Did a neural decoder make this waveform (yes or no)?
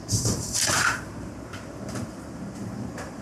yes